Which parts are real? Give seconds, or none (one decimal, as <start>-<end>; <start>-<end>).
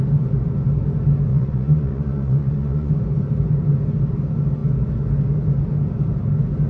0.0-1.3; 2.9-6.7